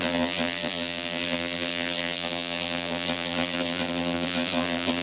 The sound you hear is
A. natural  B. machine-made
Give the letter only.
B